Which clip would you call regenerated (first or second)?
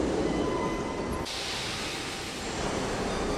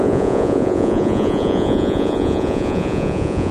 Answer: second